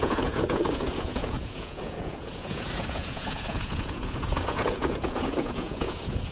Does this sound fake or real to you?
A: fake